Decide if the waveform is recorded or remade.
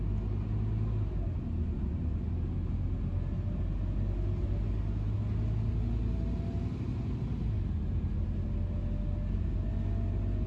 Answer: recorded